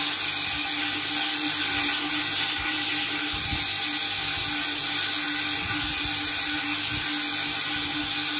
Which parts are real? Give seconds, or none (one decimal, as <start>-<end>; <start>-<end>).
0.0-8.4